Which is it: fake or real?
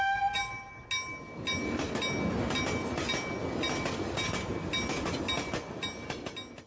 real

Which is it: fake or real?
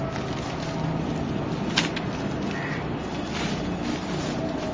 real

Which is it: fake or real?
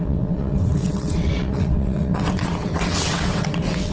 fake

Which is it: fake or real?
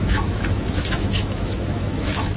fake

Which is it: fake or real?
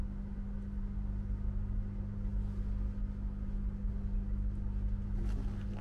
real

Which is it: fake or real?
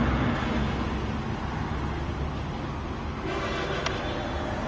real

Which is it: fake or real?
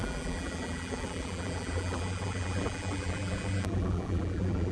fake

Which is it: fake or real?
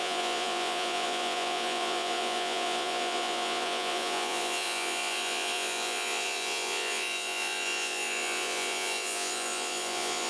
fake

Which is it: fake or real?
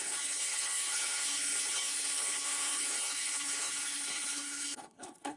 fake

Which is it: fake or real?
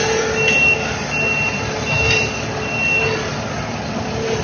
real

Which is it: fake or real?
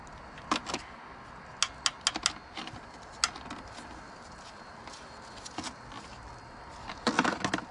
real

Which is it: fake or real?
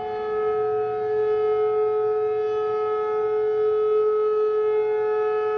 real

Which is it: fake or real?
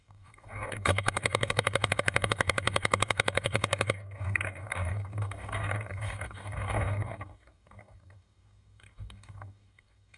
fake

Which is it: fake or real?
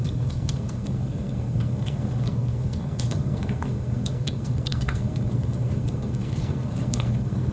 fake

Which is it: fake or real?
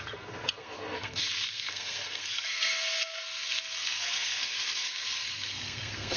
fake